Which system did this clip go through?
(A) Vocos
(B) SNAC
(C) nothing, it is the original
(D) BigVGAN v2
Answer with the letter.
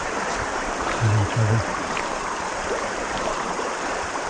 D